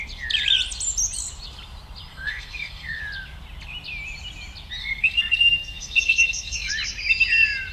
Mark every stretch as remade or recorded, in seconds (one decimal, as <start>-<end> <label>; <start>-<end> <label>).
0.0-2.1 recorded; 2.1-3.0 remade; 3.0-4.8 recorded; 4.8-6.7 remade; 6.7-7.7 recorded